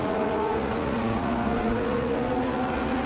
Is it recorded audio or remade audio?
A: remade